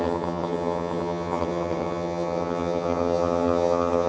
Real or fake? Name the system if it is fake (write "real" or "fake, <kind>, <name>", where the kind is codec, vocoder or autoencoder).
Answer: fake, vocoder, HiFi-GAN